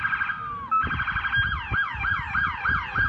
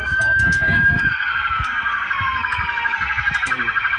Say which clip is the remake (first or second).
second